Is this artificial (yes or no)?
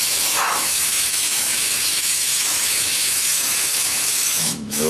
yes